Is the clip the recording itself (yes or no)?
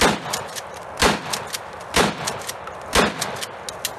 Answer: yes